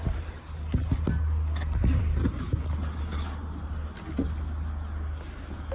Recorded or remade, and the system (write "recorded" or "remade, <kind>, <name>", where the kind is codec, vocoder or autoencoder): recorded